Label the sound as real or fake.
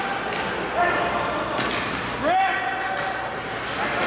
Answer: real